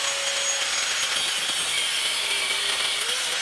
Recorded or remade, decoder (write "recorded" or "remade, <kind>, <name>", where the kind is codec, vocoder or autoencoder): recorded